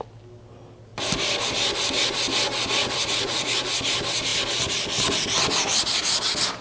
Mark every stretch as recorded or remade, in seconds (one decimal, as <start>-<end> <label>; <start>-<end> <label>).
0.0-2.8 recorded; 2.8-3.7 remade; 3.7-6.6 recorded